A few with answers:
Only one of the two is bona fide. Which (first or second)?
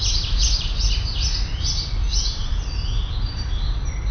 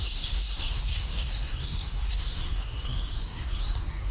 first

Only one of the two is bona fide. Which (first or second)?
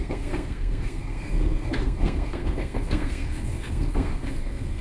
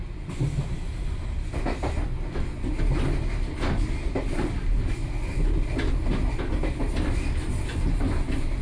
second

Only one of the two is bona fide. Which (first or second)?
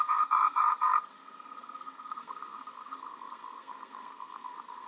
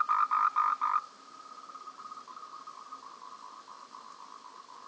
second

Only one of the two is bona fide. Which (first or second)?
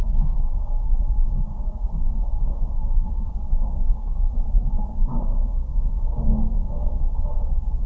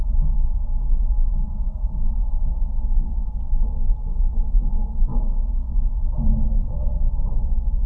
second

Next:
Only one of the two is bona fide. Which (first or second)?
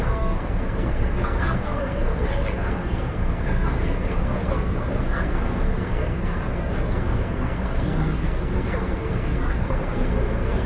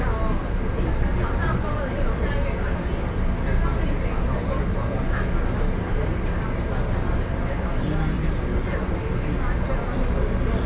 second